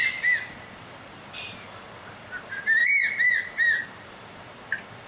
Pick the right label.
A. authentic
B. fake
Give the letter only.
B